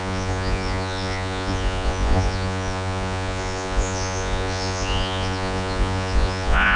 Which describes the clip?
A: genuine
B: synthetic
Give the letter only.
B